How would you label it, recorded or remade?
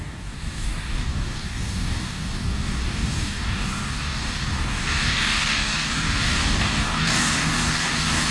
remade